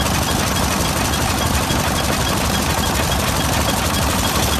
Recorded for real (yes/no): yes